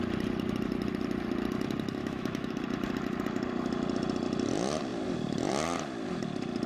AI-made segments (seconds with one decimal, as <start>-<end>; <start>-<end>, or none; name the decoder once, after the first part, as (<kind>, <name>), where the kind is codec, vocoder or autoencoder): 2.0-2.6 (autoencoder, DAC-VAE)